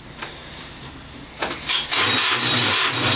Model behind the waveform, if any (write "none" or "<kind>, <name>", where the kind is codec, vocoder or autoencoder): none